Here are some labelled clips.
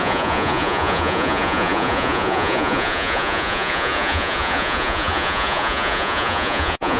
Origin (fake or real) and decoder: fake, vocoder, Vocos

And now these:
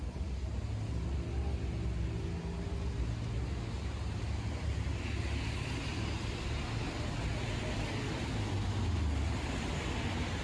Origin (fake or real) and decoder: real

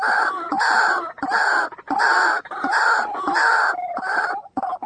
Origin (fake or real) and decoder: fake, vocoder, BigVGAN v2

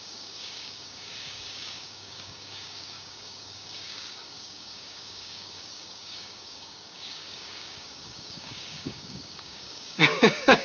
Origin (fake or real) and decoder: fake, codec, DAC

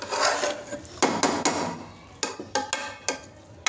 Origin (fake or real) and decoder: real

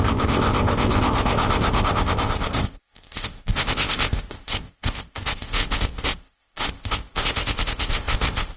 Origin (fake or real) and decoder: fake, codec, ZipCodec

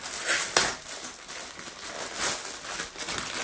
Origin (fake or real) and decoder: real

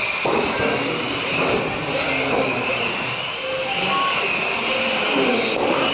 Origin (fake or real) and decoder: real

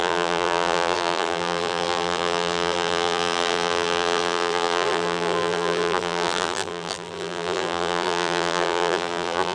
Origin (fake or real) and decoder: fake, vocoder, BigVGAN v2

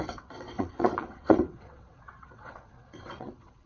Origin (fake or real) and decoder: fake, vocoder, WaveNeXt